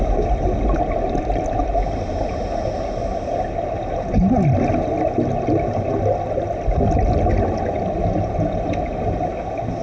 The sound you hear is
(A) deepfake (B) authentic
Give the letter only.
B